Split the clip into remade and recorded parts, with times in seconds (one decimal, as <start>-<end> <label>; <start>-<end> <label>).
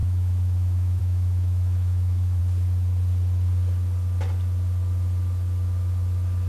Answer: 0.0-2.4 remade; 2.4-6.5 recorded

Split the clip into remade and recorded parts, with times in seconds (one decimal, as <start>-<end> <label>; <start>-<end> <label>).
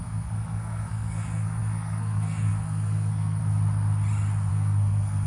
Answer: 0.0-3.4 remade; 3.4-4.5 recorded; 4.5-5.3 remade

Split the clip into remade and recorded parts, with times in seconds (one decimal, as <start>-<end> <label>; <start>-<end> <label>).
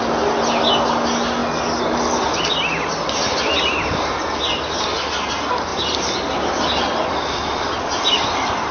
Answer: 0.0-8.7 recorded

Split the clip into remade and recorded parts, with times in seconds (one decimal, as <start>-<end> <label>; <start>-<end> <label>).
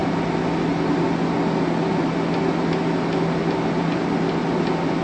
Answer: 0.0-5.0 recorded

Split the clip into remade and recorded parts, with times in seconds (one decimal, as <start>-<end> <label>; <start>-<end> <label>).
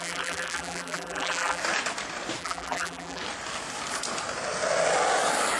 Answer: 0.0-1.6 remade; 1.6-2.4 recorded; 2.4-3.2 remade; 3.2-5.6 recorded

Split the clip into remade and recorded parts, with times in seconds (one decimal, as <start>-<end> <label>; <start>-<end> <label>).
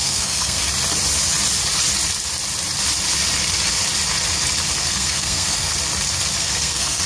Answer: 0.0-0.6 remade; 0.6-4.8 recorded; 4.8-5.7 remade; 5.7-6.4 recorded; 6.4-7.1 remade